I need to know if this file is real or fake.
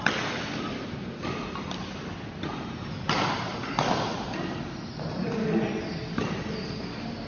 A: real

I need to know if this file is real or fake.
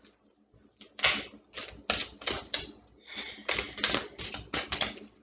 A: real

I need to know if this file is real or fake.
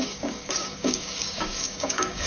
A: fake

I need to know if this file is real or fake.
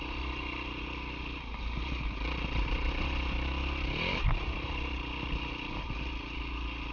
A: real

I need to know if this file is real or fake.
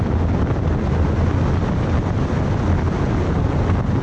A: real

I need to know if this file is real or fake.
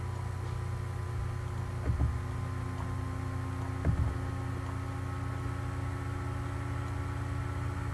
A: real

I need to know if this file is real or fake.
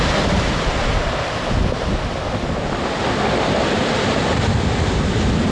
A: real